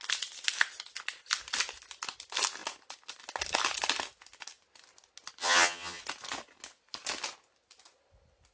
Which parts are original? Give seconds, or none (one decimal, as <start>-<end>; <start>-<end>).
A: 0.0-5.4; 6.0-8.5

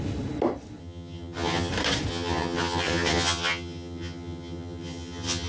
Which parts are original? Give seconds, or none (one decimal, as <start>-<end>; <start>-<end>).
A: 0.0-0.8; 1.7-2.1

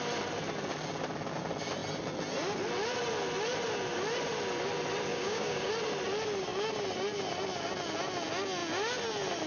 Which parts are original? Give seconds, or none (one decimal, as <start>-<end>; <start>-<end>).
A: 0.0-5.1; 5.7-9.5

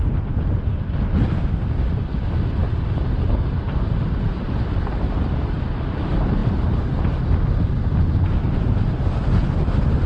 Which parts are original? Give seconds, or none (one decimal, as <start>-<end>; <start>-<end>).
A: 0.0-10.1